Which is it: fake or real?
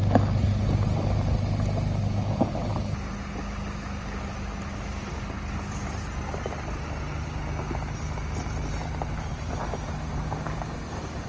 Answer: real